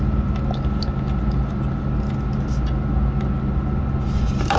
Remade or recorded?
recorded